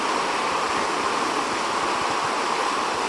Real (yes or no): yes